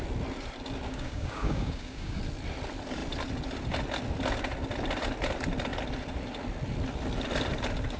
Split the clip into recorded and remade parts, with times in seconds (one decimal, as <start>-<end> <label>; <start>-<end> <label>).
0.0-0.9 recorded; 0.9-2.2 remade; 2.2-8.0 recorded